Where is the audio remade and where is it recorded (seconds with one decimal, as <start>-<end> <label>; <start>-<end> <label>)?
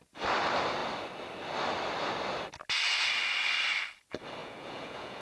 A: 0.0-4.4 recorded; 4.4-5.2 remade